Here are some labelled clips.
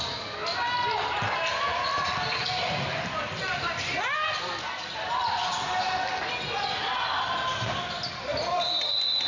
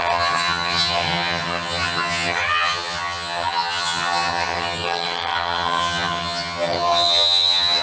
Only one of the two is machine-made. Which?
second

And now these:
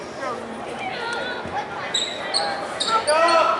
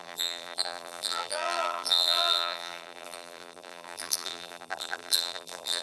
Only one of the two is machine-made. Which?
second